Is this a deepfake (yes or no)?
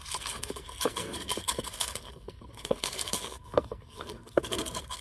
yes